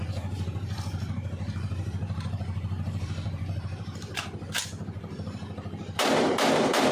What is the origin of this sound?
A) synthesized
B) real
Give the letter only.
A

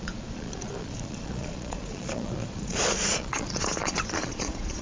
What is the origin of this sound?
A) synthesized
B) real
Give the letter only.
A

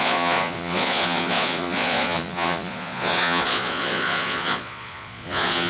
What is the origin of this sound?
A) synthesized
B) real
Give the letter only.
A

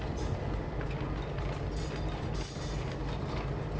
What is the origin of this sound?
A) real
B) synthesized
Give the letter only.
A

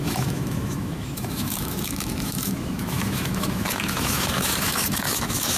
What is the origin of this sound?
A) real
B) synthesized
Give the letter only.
B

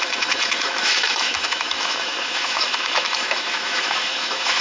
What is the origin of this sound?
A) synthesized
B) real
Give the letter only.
A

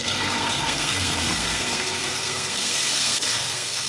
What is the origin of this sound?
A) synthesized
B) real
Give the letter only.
A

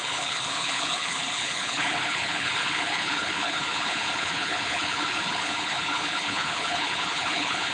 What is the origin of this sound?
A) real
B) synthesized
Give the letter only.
B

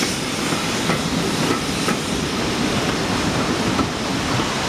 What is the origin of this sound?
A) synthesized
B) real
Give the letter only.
A